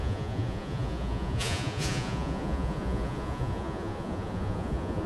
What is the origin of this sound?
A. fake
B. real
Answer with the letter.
A